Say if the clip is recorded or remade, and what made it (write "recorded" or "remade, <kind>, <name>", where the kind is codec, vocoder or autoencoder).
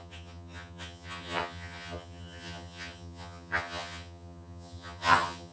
remade, vocoder, HiFi-GAN